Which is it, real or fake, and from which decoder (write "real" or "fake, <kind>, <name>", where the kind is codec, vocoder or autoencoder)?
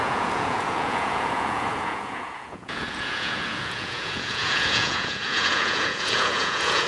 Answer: fake, vocoder, Vocos